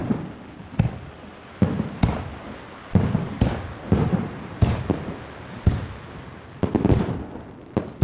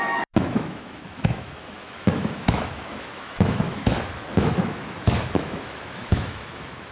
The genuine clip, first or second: first